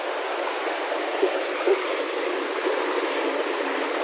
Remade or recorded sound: recorded